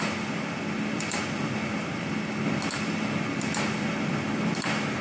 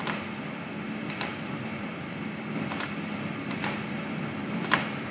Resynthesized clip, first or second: second